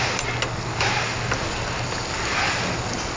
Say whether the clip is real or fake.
real